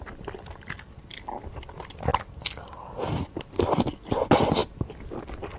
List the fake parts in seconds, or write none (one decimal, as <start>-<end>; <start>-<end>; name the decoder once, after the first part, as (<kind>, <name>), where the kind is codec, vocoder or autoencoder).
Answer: none